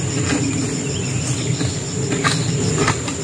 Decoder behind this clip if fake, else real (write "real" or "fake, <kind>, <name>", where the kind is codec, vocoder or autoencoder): real